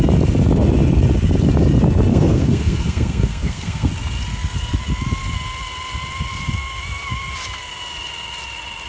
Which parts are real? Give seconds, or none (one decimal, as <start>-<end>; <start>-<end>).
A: 0.0-2.1; 3.9-8.9

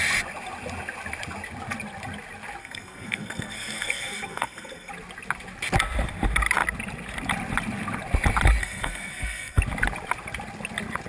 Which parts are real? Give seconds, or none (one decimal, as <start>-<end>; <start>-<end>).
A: 0.0-2.6; 4.9-8.6; 9.6-11.1